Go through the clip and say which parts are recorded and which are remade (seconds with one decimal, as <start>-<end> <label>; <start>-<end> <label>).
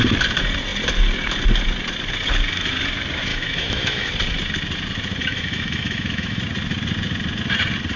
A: 0.0-3.3 recorded; 3.3-4.1 remade; 4.1-5.2 recorded; 5.2-6.4 remade; 6.4-8.0 recorded